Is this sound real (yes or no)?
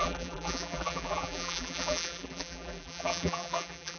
no